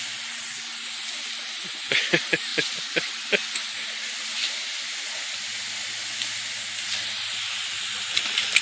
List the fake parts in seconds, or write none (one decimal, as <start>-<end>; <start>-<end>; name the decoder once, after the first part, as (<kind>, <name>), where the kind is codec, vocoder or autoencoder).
none